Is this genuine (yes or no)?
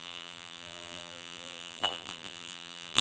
no